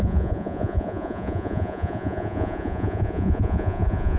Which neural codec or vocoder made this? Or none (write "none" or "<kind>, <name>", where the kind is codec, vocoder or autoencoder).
vocoder, Vocos